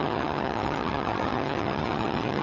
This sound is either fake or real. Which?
fake